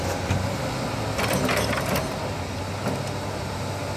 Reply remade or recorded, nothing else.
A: recorded